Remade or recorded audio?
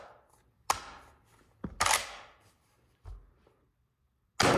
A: recorded